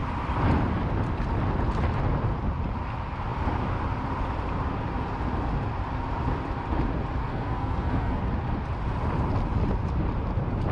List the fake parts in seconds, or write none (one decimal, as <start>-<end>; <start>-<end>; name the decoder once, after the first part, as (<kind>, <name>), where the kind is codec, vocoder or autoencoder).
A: 7.2-8.2 (codec, SNAC)